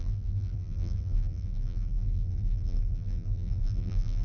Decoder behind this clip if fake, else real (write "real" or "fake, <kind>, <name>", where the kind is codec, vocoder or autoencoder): fake, vocoder, BigVGAN v2